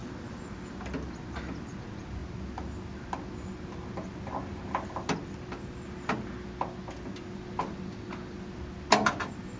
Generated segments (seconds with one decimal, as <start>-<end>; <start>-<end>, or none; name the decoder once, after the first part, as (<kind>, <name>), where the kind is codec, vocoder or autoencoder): none